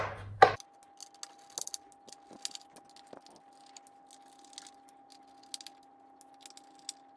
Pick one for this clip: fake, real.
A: real